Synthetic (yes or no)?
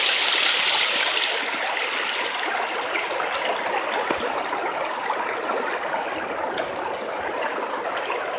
no